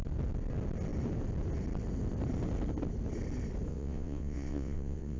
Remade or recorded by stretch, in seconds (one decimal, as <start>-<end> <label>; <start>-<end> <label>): 0.0-3.7 recorded; 3.7-5.2 remade